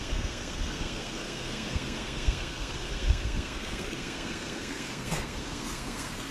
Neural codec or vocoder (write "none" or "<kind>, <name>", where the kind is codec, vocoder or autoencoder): codec, SNAC